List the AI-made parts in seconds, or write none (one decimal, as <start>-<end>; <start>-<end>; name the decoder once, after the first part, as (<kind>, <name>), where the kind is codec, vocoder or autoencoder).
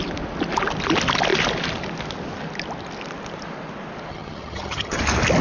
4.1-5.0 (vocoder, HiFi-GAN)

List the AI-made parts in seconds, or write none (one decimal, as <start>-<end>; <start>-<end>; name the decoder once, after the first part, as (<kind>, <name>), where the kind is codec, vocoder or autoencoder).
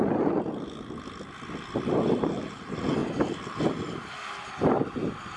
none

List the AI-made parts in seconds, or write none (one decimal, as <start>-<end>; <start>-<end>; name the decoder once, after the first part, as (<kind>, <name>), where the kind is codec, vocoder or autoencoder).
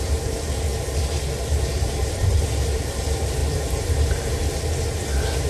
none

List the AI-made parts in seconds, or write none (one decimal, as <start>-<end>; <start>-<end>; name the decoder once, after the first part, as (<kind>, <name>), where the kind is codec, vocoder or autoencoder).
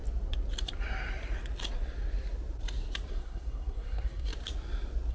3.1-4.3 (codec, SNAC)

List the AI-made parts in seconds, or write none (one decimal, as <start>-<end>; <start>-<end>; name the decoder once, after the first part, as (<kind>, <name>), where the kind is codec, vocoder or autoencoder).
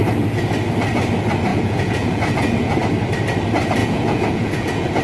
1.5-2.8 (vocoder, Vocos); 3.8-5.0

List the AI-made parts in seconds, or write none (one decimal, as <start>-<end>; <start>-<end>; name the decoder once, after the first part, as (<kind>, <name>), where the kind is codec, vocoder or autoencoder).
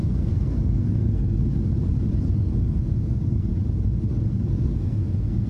0.0-1.4 (codec, SNAC); 2.4-3.5; 4.1-5.5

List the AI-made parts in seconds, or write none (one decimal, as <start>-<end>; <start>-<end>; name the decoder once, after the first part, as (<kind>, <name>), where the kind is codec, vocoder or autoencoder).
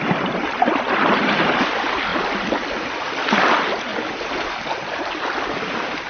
none